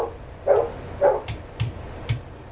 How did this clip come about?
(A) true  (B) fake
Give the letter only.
A